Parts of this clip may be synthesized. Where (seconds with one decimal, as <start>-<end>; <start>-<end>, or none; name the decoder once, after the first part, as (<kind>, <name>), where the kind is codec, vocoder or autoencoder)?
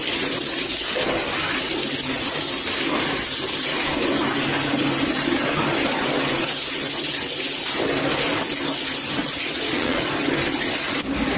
9.2-10.1 (vocoder, Vocos)